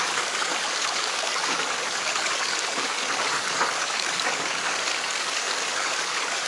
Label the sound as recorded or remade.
remade